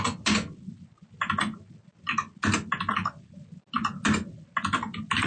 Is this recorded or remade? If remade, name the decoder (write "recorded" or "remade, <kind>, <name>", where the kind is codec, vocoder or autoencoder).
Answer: recorded